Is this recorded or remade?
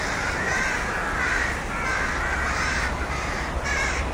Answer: recorded